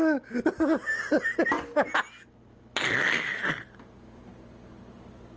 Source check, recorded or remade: recorded